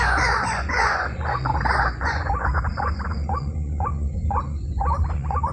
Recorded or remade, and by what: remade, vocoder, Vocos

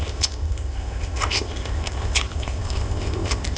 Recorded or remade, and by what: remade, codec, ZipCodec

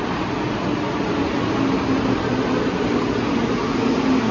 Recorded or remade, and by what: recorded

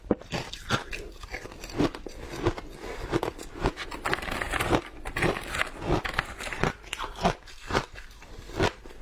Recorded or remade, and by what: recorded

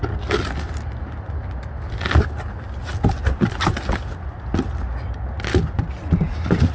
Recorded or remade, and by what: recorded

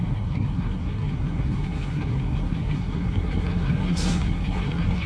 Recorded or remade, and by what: remade, codec, SNAC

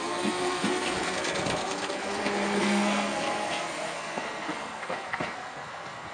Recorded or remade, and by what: remade, codec, SNAC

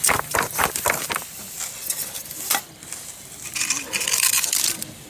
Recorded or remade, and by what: recorded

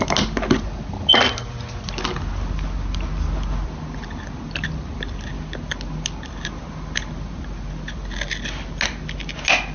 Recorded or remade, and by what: recorded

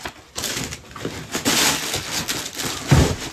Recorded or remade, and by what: recorded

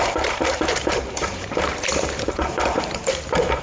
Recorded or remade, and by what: remade, vocoder, BigVGAN v2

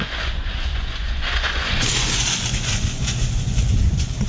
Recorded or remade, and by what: remade, vocoder, Vocos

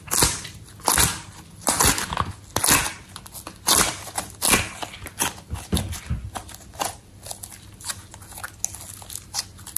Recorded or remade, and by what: recorded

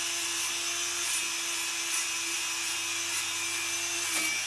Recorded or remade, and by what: recorded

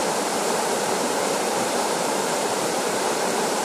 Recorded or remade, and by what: remade, vocoder, BigVGAN v2